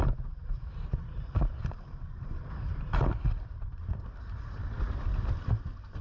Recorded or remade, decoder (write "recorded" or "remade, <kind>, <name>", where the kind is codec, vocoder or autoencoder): recorded